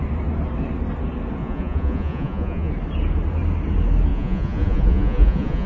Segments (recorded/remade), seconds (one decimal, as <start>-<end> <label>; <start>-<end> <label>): 0.0-1.4 recorded; 1.4-2.7 remade; 2.7-4.1 recorded; 4.1-5.7 remade